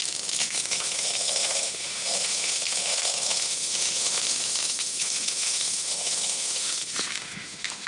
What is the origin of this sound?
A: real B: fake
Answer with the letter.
B